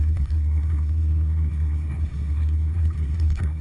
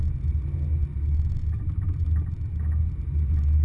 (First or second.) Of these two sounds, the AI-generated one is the first